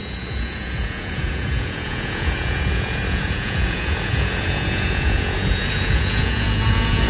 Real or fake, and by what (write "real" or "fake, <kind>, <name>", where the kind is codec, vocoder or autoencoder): fake, vocoder, Vocos